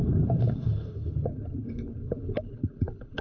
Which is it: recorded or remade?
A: remade